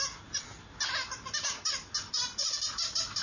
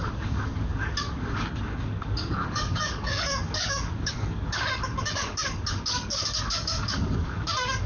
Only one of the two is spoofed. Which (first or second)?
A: second